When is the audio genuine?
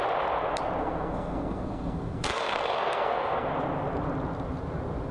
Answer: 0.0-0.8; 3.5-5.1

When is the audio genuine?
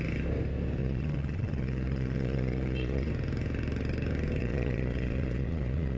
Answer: 0.0-0.8; 3.1-4.4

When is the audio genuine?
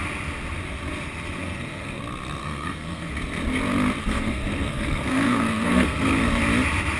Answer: 0.0-1.4; 2.0-2.4; 3.1-4.0; 6.4-7.0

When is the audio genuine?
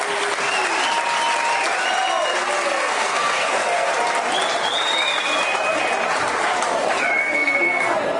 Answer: 0.0-2.7; 3.9-7.2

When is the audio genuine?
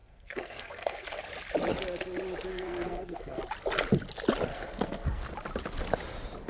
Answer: 1.2-2.5; 3.4-4.5; 5.3-6.5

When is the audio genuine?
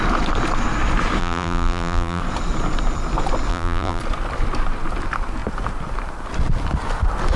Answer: 0.0-1.2; 2.2-3.5; 4.0-7.4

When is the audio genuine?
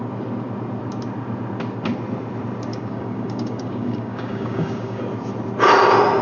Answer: 0.0-2.7; 5.0-6.2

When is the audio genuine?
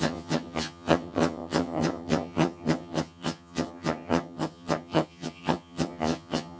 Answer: none